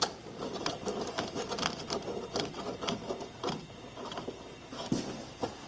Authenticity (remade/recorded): recorded